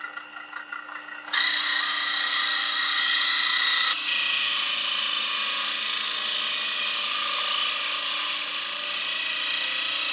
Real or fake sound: real